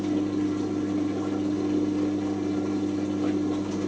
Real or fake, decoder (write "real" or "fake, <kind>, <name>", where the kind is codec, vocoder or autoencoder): real